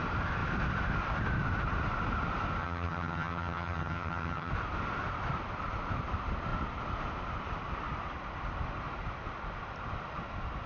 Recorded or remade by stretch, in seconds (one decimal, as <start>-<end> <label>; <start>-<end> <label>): 0.0-2.6 recorded; 2.6-4.5 remade; 4.5-10.7 recorded